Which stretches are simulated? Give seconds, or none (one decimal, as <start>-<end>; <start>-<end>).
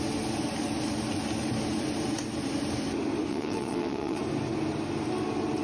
3.3-4.2